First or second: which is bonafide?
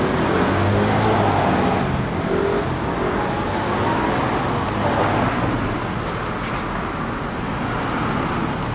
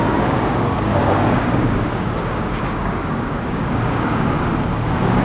first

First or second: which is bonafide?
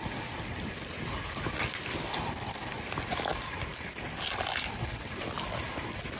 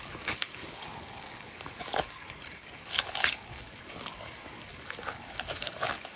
first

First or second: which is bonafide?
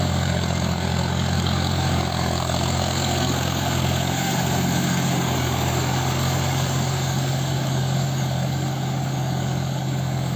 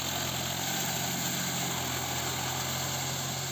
second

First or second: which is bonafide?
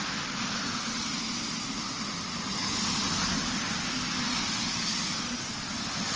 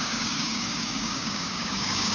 first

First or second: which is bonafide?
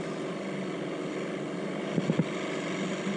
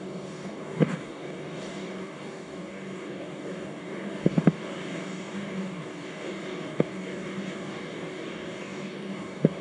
first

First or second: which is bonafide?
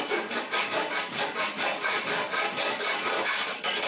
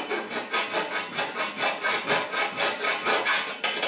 second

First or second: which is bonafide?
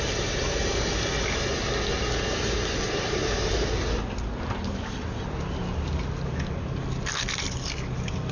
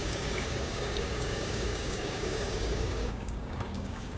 first